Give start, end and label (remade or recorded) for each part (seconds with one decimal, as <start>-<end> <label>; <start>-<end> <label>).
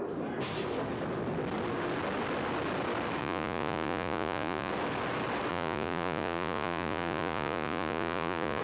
0.0-3.2 recorded; 3.2-4.7 remade; 4.7-5.5 recorded; 5.5-8.6 remade